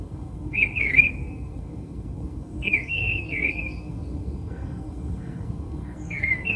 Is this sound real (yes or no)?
no